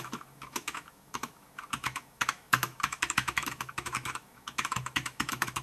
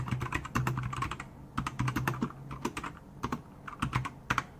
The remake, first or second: first